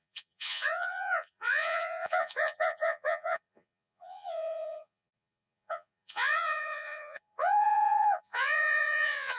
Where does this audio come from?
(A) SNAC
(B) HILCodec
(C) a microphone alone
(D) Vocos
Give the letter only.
D